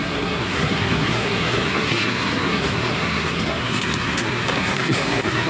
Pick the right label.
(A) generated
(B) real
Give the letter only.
A